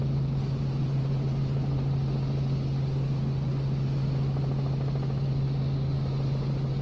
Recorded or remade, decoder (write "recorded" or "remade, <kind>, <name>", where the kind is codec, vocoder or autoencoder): recorded